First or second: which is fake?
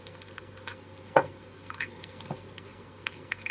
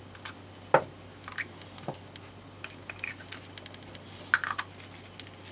first